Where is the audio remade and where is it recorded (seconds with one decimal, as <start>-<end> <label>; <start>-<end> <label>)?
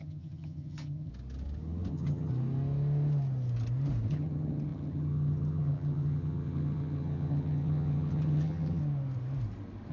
0.0-1.1 remade; 1.1-1.9 recorded; 1.9-2.3 remade; 2.3-4.1 recorded; 4.1-8.8 remade; 8.8-9.9 recorded